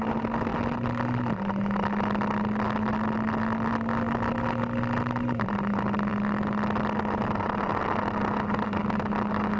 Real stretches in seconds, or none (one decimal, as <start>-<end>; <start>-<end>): 0.0-9.6